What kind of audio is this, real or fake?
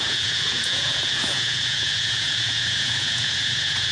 fake